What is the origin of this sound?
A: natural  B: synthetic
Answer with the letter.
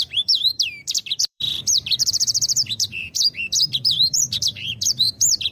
B